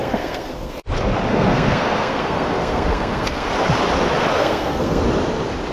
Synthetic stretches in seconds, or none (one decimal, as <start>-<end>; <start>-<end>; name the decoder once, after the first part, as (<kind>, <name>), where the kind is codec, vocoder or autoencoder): 0.0-0.8 (codec, SNAC); 1.3-3.5; 4.4-5.0